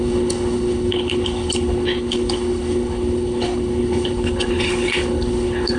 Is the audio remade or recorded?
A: remade